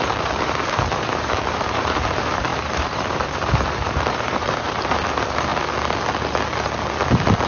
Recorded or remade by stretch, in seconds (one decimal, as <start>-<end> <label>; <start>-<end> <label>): 0.0-5.5 remade; 5.5-7.5 recorded